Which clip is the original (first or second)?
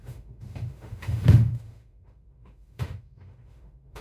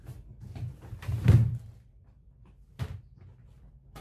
second